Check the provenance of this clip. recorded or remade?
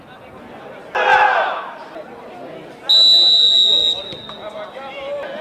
recorded